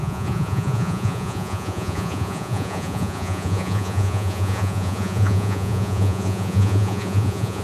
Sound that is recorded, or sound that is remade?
remade